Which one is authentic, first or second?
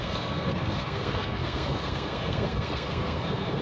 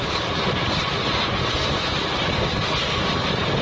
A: second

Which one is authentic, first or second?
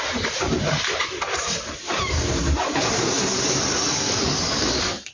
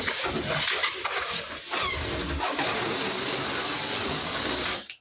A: second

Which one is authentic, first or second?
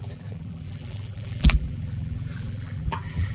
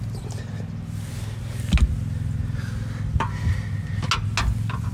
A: second